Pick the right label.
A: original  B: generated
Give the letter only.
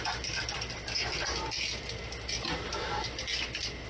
A